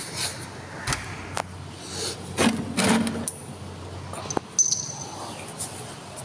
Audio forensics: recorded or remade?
recorded